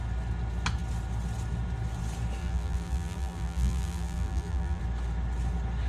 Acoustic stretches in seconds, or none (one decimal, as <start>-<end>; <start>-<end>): 0.0-2.4; 4.8-5.9